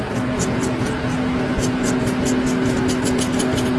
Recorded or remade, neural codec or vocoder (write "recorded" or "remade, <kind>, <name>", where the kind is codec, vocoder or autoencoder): recorded